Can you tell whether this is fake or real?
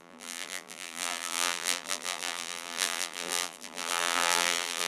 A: fake